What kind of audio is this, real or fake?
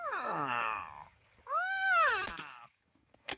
fake